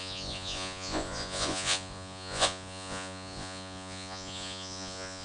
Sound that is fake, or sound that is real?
fake